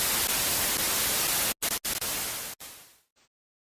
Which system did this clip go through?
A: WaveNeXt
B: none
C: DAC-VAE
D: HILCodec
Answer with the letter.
B